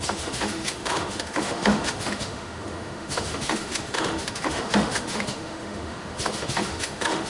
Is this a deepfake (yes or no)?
yes